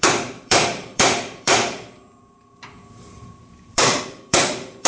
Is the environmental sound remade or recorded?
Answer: remade